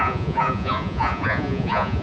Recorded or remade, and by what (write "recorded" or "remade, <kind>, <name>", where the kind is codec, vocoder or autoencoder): remade, vocoder, Vocos